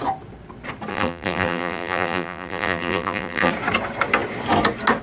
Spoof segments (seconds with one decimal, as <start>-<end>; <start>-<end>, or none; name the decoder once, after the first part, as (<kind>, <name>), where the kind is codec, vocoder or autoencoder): 0.9-3.5 (vocoder, BigVGAN v2)